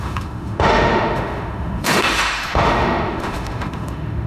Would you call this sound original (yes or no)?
no